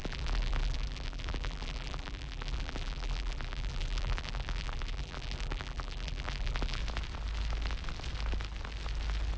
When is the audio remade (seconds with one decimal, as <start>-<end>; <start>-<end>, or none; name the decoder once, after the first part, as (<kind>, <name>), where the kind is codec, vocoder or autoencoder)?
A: 0.0-6.8 (vocoder, BigVGAN v2)